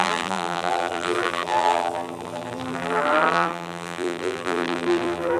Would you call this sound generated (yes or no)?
yes